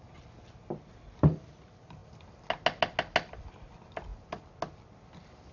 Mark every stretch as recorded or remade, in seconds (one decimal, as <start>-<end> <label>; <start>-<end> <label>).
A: 0.0-5.5 recorded